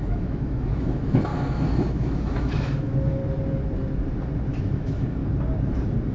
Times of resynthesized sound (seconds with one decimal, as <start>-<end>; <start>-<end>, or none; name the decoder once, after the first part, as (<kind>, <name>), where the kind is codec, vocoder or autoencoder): 0.0-1.3 (autoencoder, DAC-VAE); 1.9-3.2; 4.6-5.2